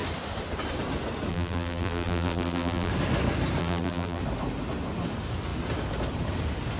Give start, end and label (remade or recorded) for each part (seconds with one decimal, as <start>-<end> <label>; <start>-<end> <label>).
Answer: 0.0-1.3 recorded; 1.3-2.9 remade; 2.9-3.6 recorded; 3.6-4.2 remade; 4.2-6.8 recorded